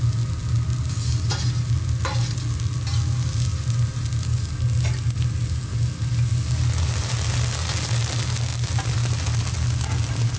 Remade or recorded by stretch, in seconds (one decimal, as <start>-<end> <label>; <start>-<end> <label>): 0.0-10.4 recorded